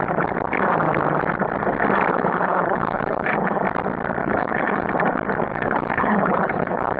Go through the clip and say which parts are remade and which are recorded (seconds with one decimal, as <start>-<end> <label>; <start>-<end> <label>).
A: 0.0-2.1 recorded; 2.1-3.5 remade; 3.5-4.2 recorded; 4.2-4.9 remade; 4.9-5.5 recorded; 5.5-7.0 remade